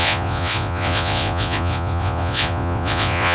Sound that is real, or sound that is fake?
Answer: fake